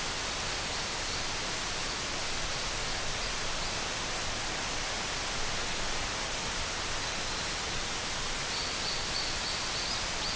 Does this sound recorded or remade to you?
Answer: recorded